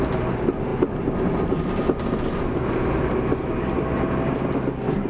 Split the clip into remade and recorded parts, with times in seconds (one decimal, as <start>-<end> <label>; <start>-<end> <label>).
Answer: 0.0-5.1 recorded

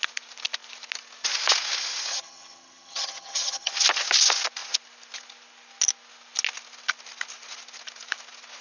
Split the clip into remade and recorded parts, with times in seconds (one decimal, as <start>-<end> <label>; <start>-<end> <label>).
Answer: 0.0-2.1 recorded; 2.1-3.7 remade; 3.7-8.6 recorded